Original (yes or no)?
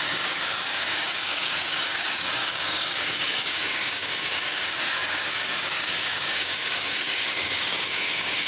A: no